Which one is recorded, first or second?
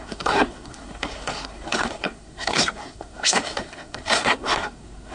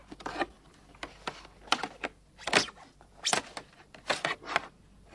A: second